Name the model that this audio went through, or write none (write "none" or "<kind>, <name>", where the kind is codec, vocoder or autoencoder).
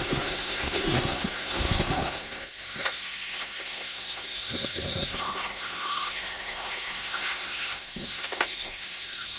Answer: codec, SNAC